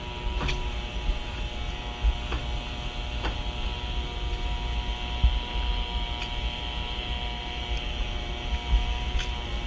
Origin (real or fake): real